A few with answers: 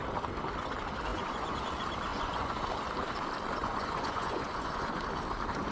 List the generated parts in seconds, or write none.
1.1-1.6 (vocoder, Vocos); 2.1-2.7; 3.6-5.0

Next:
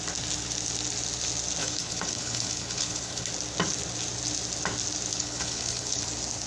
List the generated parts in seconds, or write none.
1.6-3.3 (codec, HILCodec); 5.1-6.0

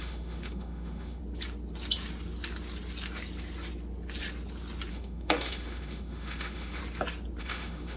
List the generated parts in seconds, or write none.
0.0-1.2 (autoencoder, DAC-VAE); 4.9-6.8; 7.4-8.0

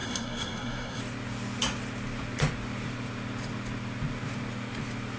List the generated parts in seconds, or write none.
0.0-1.0 (codec, SNAC)

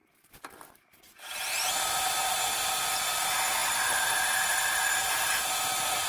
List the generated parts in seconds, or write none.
1.7-6.1 (vocoder, BigVGAN v2)

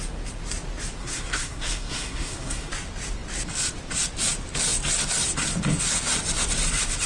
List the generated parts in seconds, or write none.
1.0-2.7 (codec, SNAC)

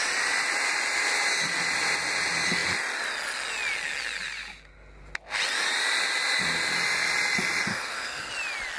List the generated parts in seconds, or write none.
7.7-8.3 (codec, SNAC)